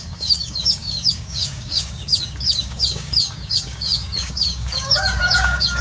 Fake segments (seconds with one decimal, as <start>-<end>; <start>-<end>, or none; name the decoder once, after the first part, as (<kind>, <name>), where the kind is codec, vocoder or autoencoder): 0.0-5.8 (codec, DAC)